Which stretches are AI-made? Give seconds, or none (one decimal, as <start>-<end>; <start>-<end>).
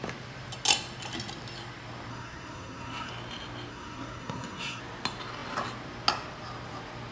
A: 2.1-3.1; 3.7-4.8